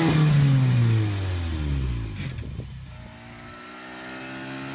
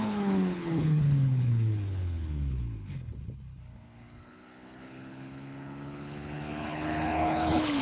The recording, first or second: first